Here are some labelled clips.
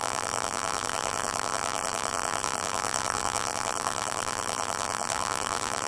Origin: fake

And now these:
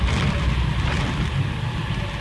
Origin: real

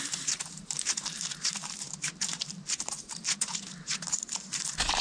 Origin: fake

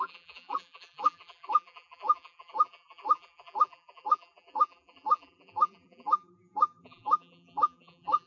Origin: fake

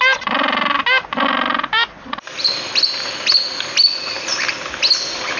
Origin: real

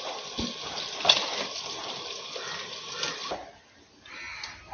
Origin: real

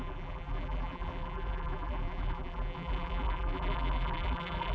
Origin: fake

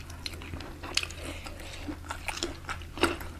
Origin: real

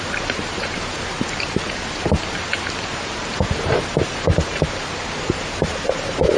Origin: fake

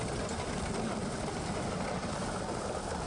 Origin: real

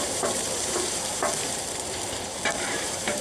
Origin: fake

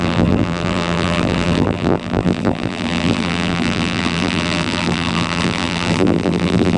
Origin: fake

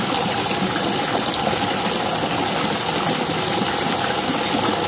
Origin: real